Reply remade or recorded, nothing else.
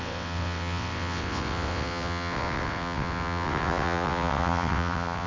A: remade